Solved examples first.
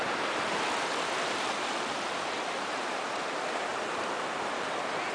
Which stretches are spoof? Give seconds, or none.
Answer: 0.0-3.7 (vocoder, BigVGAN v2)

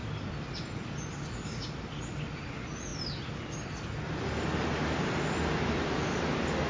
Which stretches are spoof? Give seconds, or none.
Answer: 0.0-2.0 (vocoder, BigVGAN v2); 2.9-6.1

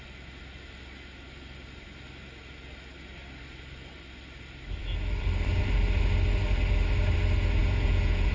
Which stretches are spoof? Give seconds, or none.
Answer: 7.6-8.3 (vocoder, Vocos)

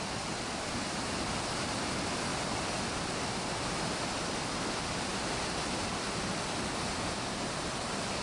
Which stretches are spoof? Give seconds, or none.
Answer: 5.1-5.7 (vocoder, BigVGAN v2)

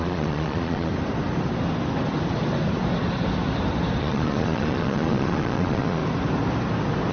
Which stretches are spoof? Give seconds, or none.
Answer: 0.0-0.9 (vocoder, Vocos); 4.0-6.0

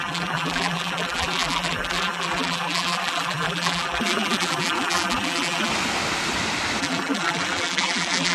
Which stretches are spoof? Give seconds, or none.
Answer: 0.0-5.7 (vocoder, BigVGAN v2); 6.8-8.3

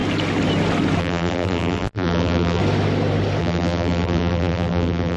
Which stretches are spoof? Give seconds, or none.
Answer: 1.0-2.6 (vocoder, BigVGAN v2); 3.4-5.2